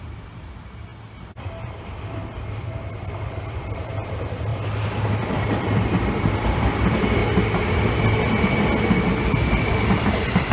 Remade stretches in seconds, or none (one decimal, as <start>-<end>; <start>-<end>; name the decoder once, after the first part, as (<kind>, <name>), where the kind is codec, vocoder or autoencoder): 0.0-7.2 (vocoder, BigVGAN v2); 9.2-10.5